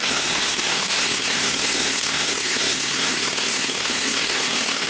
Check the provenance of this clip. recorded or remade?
remade